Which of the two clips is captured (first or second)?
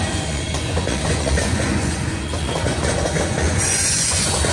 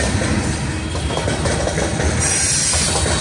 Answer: second